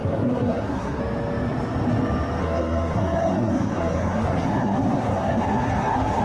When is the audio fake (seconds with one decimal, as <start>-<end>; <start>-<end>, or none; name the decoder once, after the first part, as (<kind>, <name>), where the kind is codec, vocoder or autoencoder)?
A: 0.0-1.0 (codec, SNAC); 2.4-6.2